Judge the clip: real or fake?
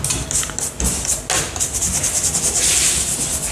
real